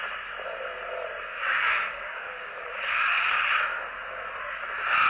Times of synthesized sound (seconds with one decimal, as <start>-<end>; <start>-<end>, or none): 1.3-3.5